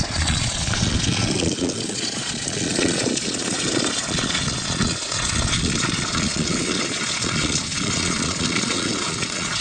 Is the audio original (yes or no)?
no